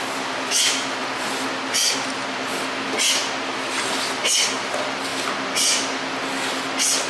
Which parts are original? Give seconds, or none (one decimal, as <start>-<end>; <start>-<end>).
0.0-7.1